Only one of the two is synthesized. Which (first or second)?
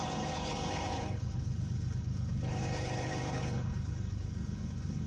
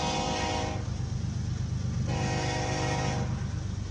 first